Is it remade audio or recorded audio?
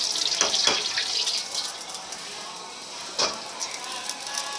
recorded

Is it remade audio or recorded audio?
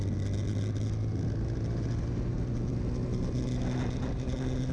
recorded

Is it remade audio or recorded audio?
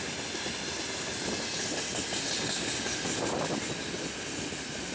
recorded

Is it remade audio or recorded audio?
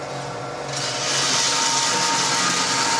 recorded